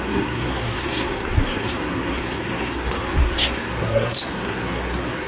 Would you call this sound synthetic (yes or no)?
yes